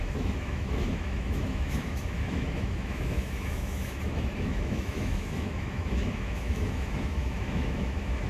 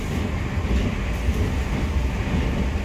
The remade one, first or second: first